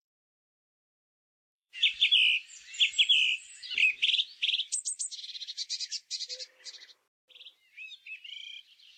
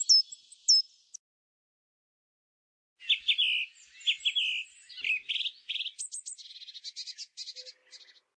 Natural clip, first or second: second